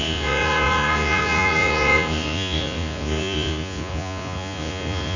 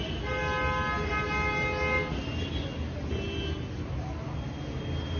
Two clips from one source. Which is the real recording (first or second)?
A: second